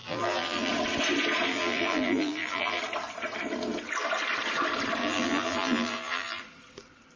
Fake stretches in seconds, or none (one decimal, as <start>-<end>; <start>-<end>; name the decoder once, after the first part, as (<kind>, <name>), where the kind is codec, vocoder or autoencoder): 0.0-0.7 (vocoder, BigVGAN v2); 1.5-2.8; 5.0-6.4

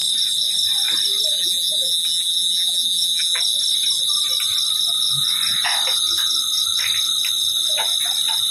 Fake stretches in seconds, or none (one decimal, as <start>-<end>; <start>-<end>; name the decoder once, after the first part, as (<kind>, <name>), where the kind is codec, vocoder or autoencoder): 1.3-3.4 (vocoder, BigVGAN v2)

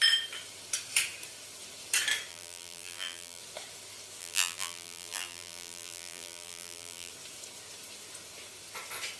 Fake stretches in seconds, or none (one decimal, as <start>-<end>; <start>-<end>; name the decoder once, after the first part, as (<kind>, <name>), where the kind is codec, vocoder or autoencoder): 2.3-3.4 (vocoder, BigVGAN v2); 4.2-7.1

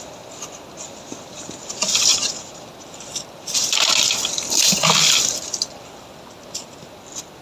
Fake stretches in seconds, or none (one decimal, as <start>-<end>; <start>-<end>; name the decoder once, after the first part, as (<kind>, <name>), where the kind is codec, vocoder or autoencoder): 2.1-6.1 (vocoder, BigVGAN v2)